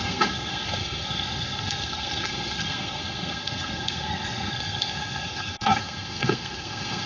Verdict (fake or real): fake